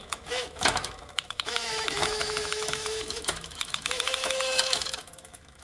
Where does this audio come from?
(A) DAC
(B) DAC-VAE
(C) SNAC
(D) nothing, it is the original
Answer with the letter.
B